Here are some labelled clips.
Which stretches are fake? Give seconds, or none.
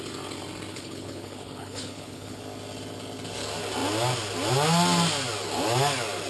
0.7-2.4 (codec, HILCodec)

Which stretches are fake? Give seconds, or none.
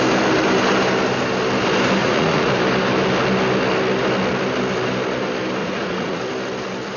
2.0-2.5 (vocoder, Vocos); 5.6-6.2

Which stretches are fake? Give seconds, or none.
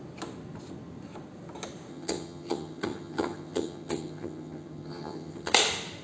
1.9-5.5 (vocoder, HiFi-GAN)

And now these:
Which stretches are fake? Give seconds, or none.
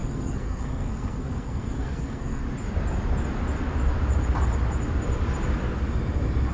0.0-2.4 (codec, SNAC)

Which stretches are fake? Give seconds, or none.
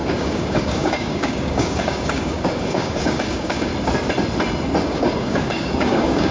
0.0-3.7 (codec, DAC); 4.8-6.3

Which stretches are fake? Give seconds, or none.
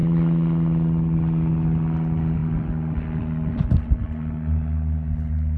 none